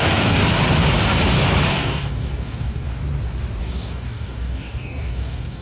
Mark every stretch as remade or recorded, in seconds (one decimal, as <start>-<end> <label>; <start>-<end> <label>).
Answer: 0.0-0.4 remade; 0.4-1.7 recorded; 1.7-3.0 remade; 3.0-3.6 recorded; 3.6-5.6 remade